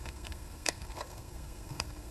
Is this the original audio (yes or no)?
no